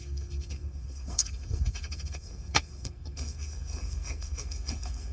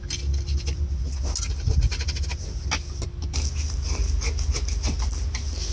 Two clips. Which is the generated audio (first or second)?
first